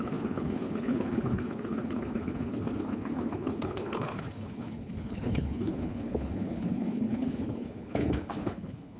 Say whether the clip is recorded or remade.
remade